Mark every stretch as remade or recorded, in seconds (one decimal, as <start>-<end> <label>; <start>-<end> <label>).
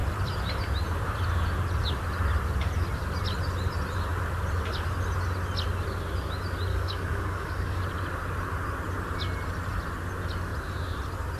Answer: 0.0-6.7 recorded; 6.7-7.8 remade; 7.8-11.4 recorded